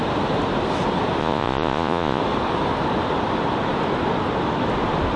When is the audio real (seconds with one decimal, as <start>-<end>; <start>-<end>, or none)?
0.0-1.2; 2.2-5.2